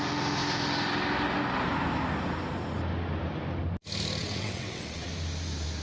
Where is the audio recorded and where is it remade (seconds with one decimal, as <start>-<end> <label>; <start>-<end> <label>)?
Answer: 0.0-4.2 recorded; 4.2-5.1 remade; 5.1-5.8 recorded